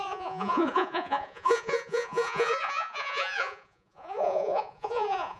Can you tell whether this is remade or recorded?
remade